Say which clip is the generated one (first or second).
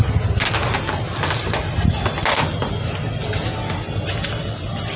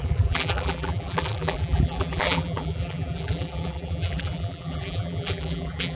second